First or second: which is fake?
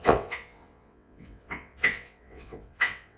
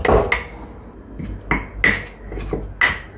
first